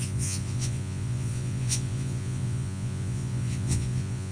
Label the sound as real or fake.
fake